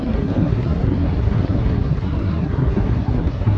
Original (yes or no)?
no